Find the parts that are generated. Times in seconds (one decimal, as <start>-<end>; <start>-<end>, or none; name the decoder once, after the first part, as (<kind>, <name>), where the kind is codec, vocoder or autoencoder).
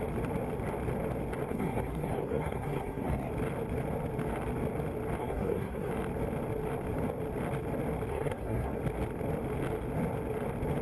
1.5-3.3 (codec, SNAC); 5.2-5.9; 8.1-8.8